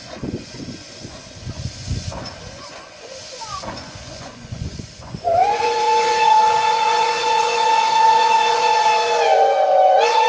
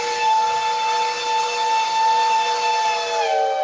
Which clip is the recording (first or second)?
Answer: second